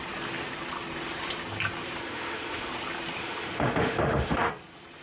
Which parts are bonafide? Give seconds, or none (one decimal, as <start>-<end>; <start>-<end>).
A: 0.0-2.0; 2.7-3.2; 4.5-5.0